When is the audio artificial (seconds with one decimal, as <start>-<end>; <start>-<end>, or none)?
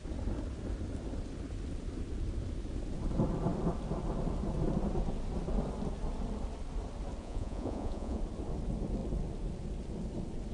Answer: 7.2-8.2